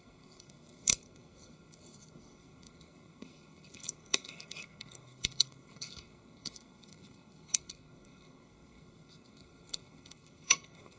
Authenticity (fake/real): fake